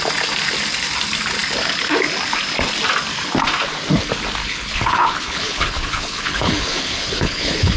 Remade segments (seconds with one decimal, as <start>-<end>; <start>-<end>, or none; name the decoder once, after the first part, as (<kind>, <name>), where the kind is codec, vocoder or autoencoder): 4.4-7.8 (codec, HILCodec)